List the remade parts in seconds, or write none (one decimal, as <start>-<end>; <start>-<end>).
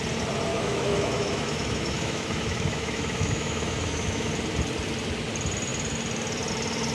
0.5-4.3